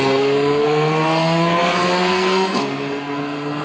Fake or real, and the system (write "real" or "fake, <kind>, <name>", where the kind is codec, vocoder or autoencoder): fake, codec, SNAC